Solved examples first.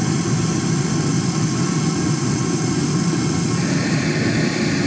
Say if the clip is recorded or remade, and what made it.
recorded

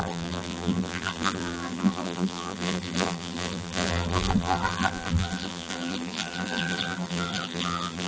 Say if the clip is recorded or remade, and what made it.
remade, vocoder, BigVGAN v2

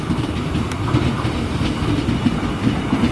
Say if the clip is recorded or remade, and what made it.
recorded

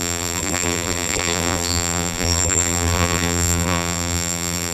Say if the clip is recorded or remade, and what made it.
remade, vocoder, BigVGAN v2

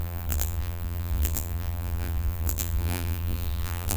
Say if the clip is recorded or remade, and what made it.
remade, vocoder, BigVGAN v2